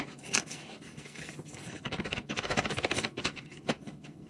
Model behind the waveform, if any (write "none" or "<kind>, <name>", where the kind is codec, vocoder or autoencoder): codec, SNAC